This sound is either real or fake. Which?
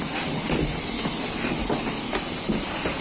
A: real